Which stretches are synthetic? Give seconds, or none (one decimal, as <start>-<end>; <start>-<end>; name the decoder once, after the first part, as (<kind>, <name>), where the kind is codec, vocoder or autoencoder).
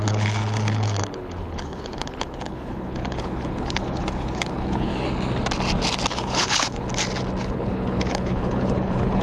0.0-4.9 (codec, HILCodec); 6.1-6.9; 7.4-9.2